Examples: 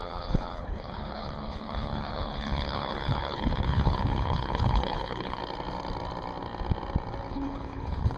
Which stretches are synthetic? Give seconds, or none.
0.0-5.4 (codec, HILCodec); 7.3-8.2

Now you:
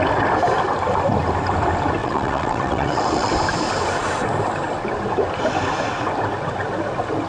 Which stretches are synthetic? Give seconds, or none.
2.0-3.3 (vocoder, WaveNeXt)

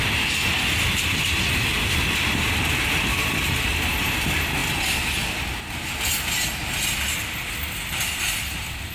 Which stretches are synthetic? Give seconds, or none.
none

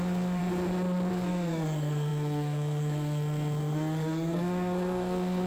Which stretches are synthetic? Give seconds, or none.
0.0-0.4 (codec, SNAC); 1.1-5.5

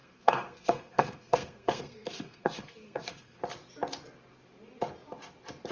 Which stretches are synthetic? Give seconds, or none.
0.0-3.4 (codec, SNAC)